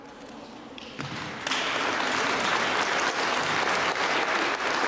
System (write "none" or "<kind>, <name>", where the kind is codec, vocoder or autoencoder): none